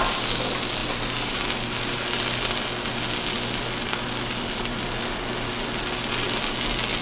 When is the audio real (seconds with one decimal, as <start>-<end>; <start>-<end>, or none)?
0.0-7.0